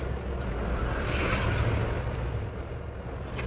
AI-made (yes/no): no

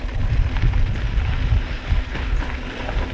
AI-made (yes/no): no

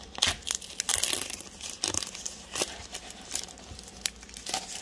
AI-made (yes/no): no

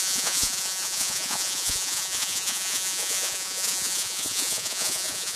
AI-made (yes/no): yes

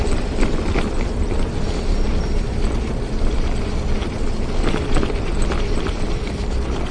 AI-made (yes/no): no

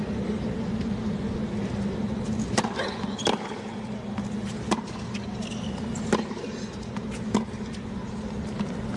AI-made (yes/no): no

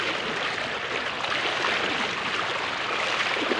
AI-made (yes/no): no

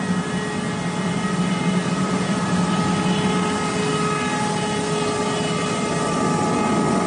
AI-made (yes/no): no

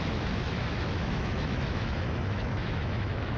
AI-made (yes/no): yes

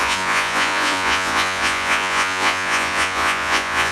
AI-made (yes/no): yes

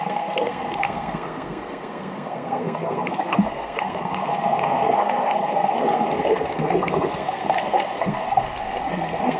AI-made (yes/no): yes